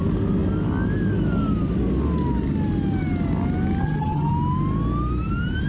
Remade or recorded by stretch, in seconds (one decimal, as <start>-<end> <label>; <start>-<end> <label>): 0.0-3.8 recorded; 3.8-4.3 remade; 4.3-5.7 recorded